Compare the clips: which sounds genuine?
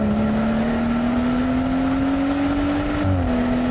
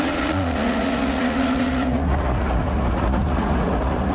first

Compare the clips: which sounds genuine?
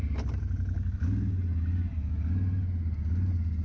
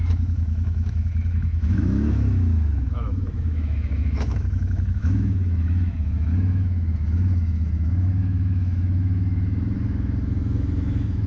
first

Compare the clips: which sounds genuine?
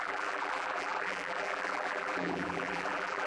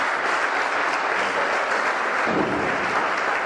second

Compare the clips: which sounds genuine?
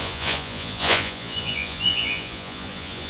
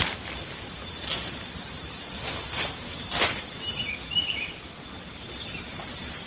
second